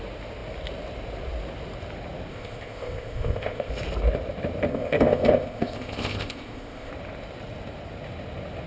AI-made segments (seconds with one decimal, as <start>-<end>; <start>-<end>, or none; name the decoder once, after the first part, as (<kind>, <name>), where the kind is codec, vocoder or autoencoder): 2.3-3.7 (codec, ZipCodec); 4.7-6.9